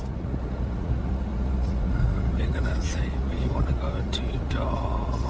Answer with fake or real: fake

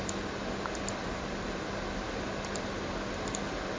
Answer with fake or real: real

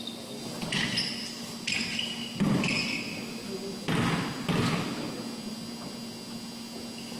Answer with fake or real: real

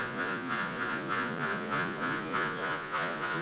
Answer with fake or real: fake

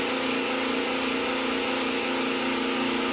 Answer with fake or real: real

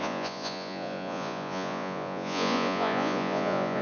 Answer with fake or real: fake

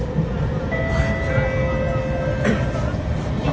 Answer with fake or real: real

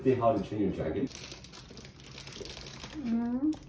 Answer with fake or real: real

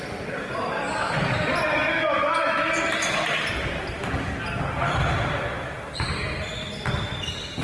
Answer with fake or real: real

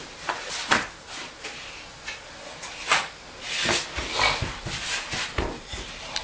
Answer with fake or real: real